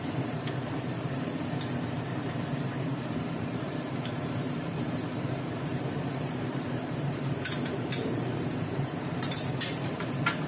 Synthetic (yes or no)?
yes